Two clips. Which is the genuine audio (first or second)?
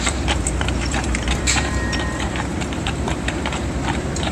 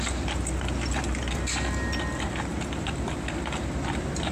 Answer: second